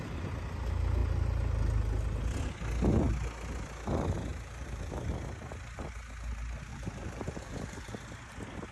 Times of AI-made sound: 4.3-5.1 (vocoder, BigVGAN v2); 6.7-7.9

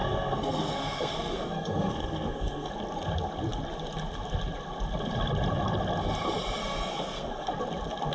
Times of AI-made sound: 0.0-2.7 (codec, SNAC); 6.6-7.5

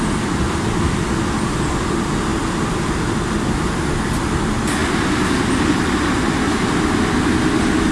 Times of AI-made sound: 2.3-3.0 (vocoder, BigVGAN v2)

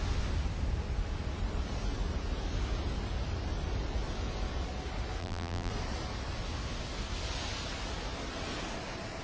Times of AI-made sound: 5.2-5.7 (vocoder, BigVGAN v2)

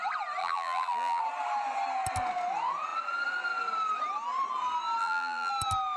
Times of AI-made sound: 0.4-1.2 (vocoder, BigVGAN v2); 5.0-5.5